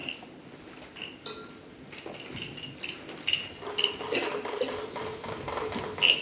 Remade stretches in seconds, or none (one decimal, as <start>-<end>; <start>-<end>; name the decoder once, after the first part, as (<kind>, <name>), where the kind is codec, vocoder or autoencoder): none